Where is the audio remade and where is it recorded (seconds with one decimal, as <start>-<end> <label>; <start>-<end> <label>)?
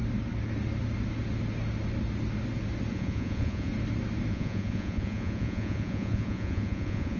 0.0-2.9 recorded; 2.9-3.7 remade; 3.7-4.3 recorded; 4.3-7.2 remade